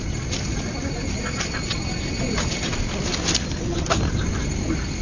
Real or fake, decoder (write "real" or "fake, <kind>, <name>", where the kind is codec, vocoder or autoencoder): real